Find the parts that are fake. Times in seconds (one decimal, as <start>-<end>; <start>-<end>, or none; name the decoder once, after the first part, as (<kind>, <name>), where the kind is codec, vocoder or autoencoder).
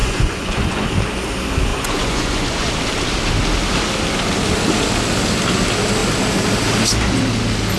0.0-0.9 (vocoder, Vocos); 1.7-2.7